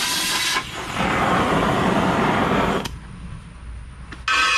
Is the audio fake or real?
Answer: real